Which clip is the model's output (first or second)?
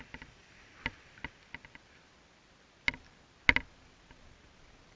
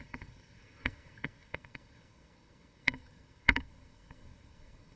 second